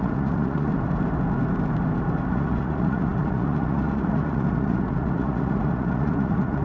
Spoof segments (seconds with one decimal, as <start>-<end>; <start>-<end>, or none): 0.0-0.7; 2.3-6.6